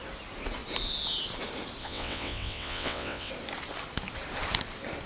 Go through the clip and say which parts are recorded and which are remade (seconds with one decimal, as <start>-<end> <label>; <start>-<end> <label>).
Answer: 0.0-1.8 recorded; 1.8-3.3 remade; 3.3-5.1 recorded

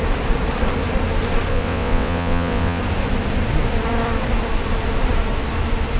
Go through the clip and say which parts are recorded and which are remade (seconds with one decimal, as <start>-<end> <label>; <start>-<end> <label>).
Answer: 0.0-1.5 recorded; 1.5-2.8 remade; 2.8-6.0 recorded

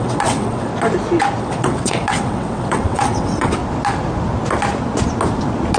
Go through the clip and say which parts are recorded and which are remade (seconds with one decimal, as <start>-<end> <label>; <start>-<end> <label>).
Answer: 0.0-0.7 remade; 0.7-1.4 recorded; 1.4-3.6 remade; 3.6-5.8 recorded